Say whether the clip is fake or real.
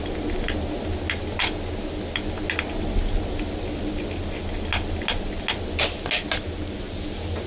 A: real